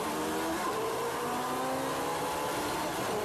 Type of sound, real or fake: real